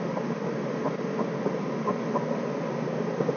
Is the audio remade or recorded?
recorded